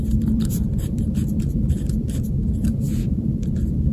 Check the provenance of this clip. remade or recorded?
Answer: remade